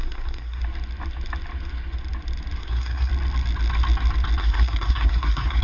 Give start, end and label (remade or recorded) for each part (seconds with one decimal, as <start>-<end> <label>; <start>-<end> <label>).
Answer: 0.0-0.6 remade; 0.6-2.6 recorded; 2.6-3.1 remade; 3.1-4.4 recorded; 4.4-5.6 remade